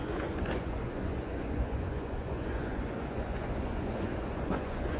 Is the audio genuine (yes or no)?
no